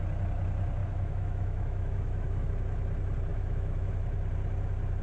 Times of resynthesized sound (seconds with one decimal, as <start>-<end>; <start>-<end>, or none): 0.8-2.5; 3.3-3.9